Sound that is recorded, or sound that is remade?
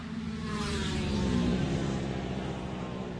remade